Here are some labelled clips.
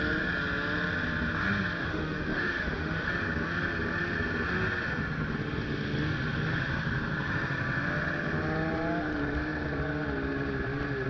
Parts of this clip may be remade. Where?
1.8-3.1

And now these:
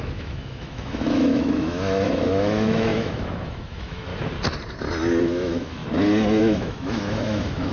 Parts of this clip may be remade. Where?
0.0-4.1; 5.2-5.8; 6.4-7.7

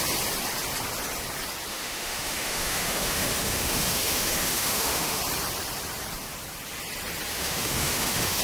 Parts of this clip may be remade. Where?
1.7-5.2; 7.3-8.4